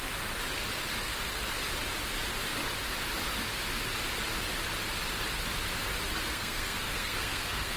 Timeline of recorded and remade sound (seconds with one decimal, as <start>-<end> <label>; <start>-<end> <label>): 0.0-6.3 recorded; 6.3-7.8 remade